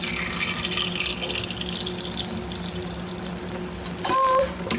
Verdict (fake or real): real